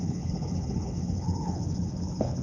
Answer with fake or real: fake